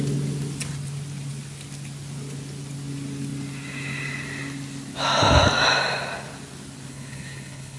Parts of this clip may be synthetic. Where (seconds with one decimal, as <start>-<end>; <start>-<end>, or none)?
6.9-7.8